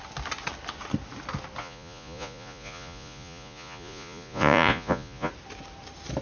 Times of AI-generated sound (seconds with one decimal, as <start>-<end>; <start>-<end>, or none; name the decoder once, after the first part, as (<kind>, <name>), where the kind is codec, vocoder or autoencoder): 1.6-5.3 (vocoder, Vocos)